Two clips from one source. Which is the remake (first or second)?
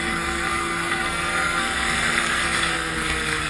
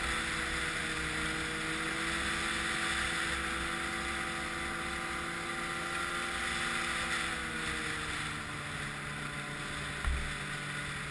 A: first